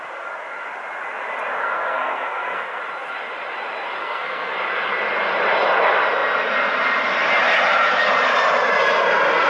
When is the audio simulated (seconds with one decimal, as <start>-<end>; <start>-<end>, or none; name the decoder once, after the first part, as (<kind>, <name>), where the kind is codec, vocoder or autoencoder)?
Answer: 1.6-2.8 (codec, SNAC); 4.0-4.5